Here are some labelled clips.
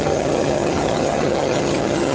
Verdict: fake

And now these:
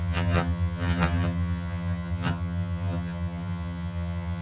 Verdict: fake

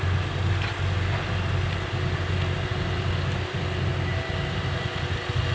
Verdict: real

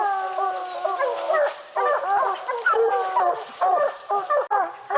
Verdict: real